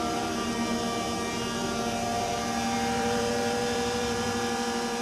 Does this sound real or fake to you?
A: fake